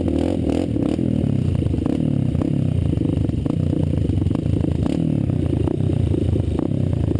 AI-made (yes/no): no